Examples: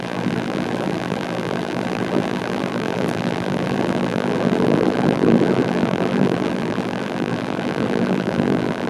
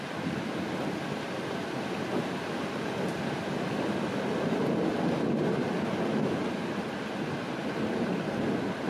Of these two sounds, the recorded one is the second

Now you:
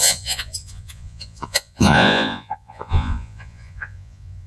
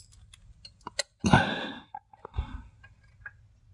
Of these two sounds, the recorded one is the second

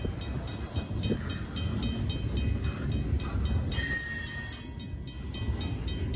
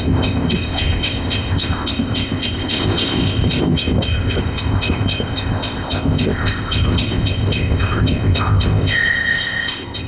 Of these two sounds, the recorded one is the first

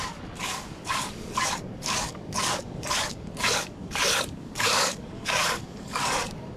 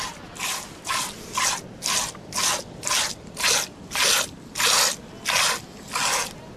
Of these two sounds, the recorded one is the second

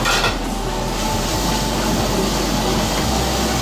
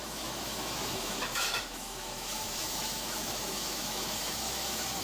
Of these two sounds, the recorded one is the first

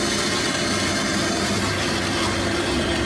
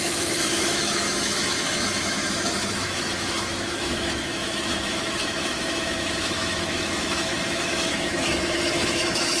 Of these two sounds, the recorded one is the first